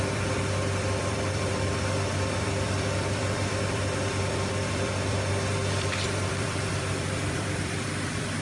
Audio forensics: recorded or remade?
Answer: remade